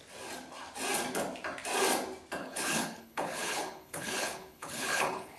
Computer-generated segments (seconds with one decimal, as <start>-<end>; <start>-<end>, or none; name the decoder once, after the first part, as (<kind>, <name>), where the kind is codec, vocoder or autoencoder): 2.4-5.4 (codec, HILCodec)

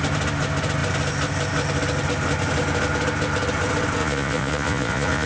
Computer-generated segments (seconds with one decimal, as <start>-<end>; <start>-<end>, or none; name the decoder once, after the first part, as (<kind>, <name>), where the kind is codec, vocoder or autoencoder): 4.0-5.3 (vocoder, Vocos)

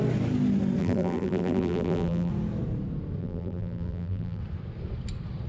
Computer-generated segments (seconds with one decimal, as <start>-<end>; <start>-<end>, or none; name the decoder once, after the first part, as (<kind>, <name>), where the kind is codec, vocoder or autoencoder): 0.8-2.3 (vocoder, BigVGAN v2); 3.2-4.4

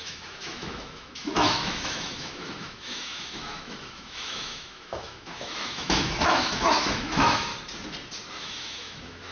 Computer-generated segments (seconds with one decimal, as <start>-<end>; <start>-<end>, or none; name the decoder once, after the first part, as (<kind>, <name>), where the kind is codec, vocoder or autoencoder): 0.0-7.5 (autoencoder, DAC-VAE); 8.3-9.3